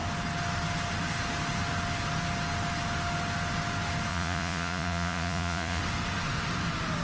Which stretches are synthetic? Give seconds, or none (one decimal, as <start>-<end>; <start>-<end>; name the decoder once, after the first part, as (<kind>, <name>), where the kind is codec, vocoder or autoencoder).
4.1-5.8 (vocoder, Vocos)